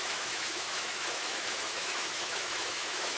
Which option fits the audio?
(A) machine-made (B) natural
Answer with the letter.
A